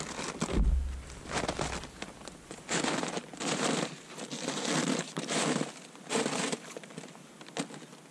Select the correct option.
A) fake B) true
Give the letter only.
B